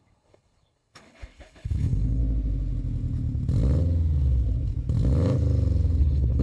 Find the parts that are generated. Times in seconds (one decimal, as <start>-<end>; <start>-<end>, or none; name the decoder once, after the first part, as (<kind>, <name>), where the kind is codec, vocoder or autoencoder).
0.0-2.2 (codec, HILCodec); 6.0-6.4